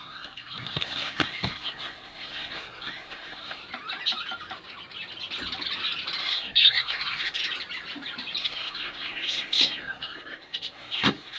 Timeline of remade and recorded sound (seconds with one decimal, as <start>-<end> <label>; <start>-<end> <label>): 0.0-3.6 remade; 3.6-6.2 recorded; 6.2-7.4 remade; 7.4-8.4 recorded; 8.4-11.4 remade